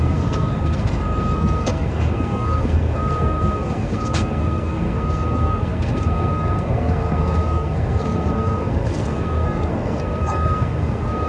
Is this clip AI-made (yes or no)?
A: yes